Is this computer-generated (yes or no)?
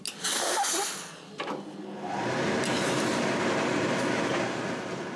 no